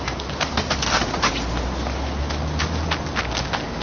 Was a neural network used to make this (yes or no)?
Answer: no